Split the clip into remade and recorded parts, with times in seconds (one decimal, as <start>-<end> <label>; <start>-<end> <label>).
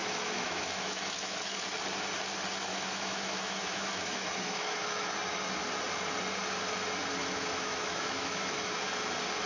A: 0.0-1.6 remade; 1.6-2.7 recorded; 2.7-5.1 remade; 5.1-7.2 recorded; 7.2-8.7 remade; 8.7-9.5 recorded